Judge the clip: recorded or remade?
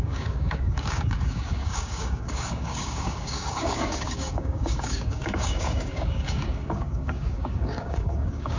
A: remade